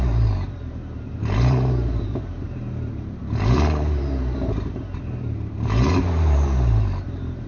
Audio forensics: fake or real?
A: fake